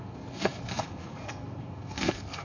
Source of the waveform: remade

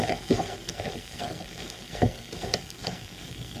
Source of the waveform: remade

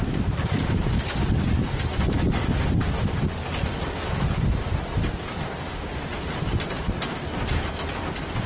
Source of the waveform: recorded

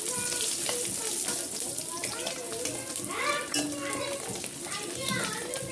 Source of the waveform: remade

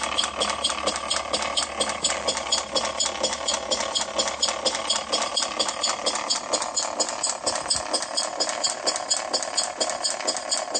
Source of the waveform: recorded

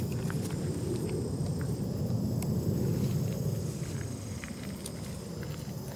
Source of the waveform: recorded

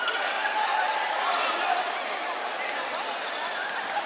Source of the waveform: recorded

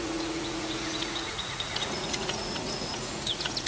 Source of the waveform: remade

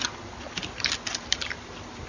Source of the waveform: recorded